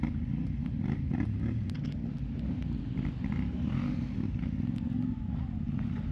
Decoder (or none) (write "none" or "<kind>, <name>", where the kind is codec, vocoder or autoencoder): none